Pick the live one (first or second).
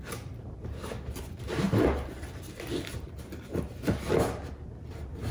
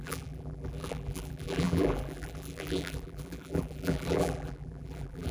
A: first